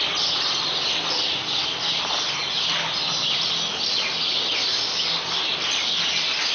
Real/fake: real